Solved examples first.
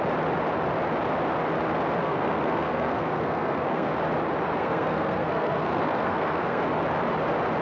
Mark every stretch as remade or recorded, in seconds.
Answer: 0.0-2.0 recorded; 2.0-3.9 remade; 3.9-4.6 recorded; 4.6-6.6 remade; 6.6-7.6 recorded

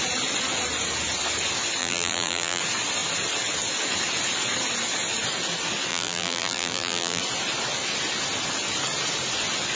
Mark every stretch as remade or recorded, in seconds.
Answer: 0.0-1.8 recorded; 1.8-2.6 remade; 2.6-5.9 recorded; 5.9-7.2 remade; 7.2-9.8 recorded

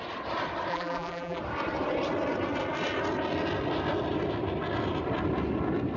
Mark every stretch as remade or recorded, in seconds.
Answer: 0.0-0.7 recorded; 0.7-1.4 remade; 1.4-6.0 recorded

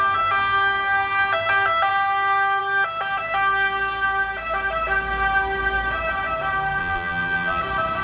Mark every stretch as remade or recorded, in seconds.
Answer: 0.0-6.8 recorded; 6.8-7.6 remade; 7.6-8.0 recorded

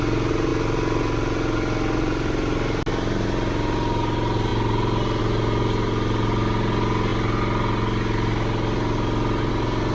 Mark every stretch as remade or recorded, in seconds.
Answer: 0.0-9.9 recorded

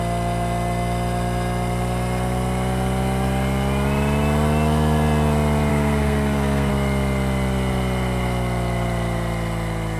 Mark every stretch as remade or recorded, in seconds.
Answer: 0.0-5.7 recorded; 5.7-6.7 remade; 6.7-10.0 recorded

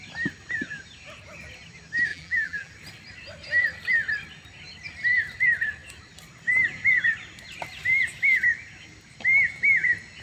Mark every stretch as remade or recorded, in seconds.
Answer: 0.0-2.1 recorded; 2.1-2.7 remade; 2.7-10.2 recorded

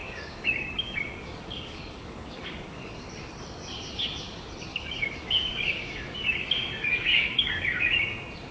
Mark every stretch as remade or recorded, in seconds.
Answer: 0.0-3.0 remade; 3.0-4.7 recorded; 4.7-7.8 remade; 7.8-8.5 recorded